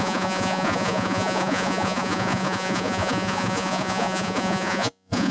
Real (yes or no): no